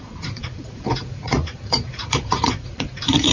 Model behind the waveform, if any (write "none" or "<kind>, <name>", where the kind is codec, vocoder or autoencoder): vocoder, Vocos